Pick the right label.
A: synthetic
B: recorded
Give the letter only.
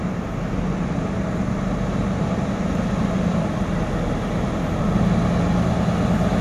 B